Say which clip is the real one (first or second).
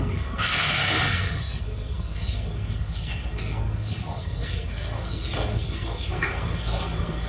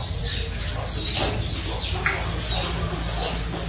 second